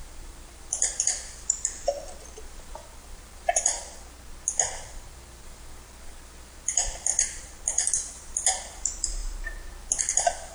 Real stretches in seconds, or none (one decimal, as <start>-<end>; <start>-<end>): 3.8-4.9; 9.2-10.0